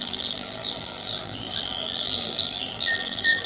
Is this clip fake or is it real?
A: fake